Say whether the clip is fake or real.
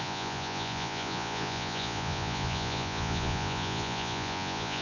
fake